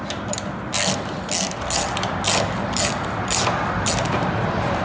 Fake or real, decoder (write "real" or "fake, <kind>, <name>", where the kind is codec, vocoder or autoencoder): real